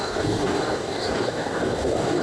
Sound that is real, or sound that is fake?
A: fake